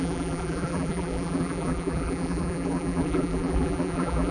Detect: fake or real fake